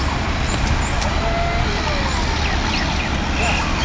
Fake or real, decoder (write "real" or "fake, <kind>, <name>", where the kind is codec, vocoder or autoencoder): real